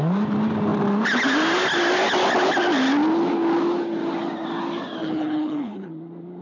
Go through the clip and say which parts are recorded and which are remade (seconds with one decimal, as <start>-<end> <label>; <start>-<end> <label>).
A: 0.0-5.0 recorded; 5.0-5.9 remade; 5.9-6.4 recorded

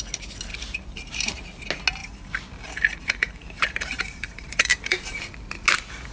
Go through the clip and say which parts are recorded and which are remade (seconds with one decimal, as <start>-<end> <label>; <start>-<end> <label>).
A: 0.0-0.5 recorded; 0.5-1.3 remade; 1.3-2.0 recorded; 2.0-5.2 remade; 5.2-6.1 recorded

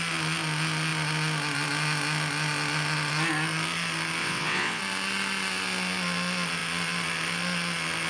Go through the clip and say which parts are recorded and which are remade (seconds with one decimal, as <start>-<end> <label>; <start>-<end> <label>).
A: 0.0-4.2 recorded; 4.2-4.8 remade; 4.8-8.1 recorded